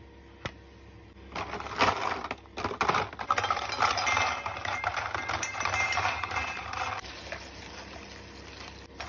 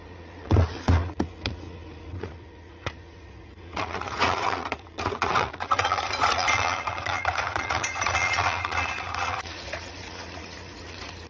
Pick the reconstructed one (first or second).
second